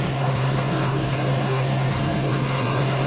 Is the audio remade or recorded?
remade